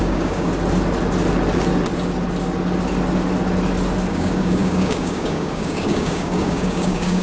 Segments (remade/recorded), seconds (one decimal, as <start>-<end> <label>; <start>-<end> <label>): 0.0-0.5 remade; 0.5-4.1 recorded; 4.1-7.2 remade